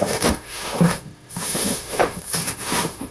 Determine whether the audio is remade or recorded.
remade